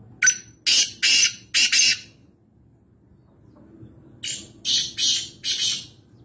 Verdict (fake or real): real